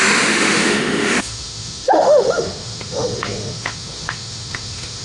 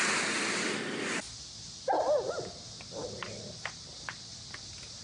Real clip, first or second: second